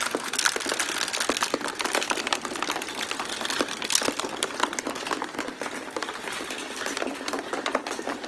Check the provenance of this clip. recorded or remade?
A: recorded